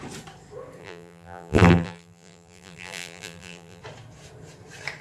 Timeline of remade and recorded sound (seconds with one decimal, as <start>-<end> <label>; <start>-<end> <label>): 0.0-0.8 recorded; 0.8-3.8 remade; 3.8-5.0 recorded